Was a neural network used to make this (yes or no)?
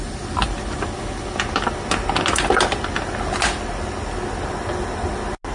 no